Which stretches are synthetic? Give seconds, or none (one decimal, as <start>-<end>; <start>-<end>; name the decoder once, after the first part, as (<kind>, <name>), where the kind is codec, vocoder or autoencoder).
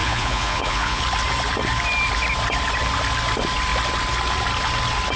0.0-1.0 (vocoder, Vocos)